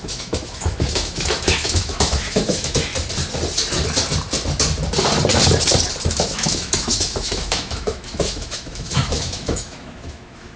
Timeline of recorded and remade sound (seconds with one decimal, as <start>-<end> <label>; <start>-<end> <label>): 0.0-2.9 remade; 2.9-6.1 recorded; 6.1-10.6 remade